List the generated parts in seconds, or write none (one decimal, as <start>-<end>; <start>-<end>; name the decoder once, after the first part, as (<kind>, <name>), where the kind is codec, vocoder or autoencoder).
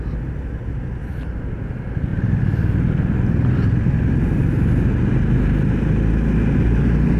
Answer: none